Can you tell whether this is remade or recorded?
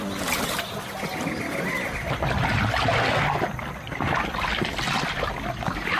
recorded